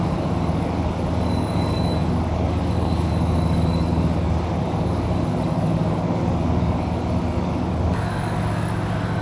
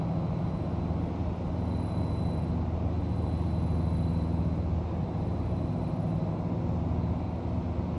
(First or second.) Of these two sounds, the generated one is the first